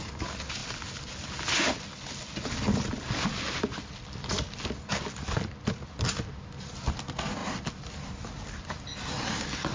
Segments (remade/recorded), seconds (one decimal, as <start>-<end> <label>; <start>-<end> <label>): 0.0-9.7 recorded